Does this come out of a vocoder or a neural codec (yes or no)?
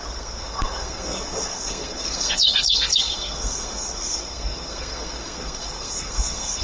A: yes